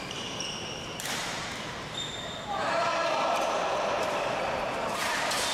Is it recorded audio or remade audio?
remade